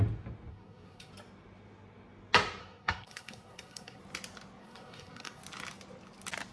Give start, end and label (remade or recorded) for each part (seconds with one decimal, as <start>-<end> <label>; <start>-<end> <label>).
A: 0.0-0.5 recorded; 0.5-1.1 remade; 1.1-2.6 recorded; 2.6-4.0 remade; 4.0-4.6 recorded; 4.6-5.4 remade; 5.4-6.5 recorded